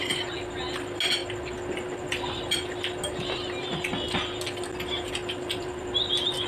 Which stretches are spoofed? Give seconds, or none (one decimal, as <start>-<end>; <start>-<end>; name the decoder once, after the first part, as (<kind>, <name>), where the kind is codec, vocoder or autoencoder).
none